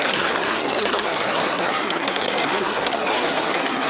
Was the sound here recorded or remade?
remade